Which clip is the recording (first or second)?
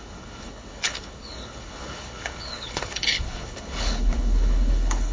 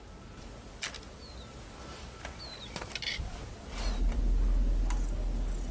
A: second